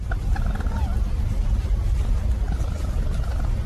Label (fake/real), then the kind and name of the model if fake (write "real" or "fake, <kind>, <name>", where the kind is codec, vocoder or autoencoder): real